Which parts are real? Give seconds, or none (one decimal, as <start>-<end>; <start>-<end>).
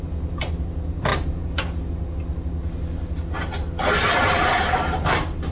0.0-5.5